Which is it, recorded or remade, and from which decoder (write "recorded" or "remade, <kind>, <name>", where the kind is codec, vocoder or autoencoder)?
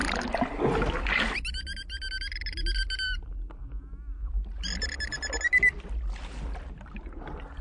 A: recorded